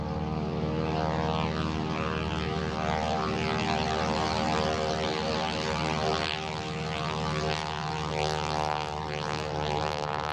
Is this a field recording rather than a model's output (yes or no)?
no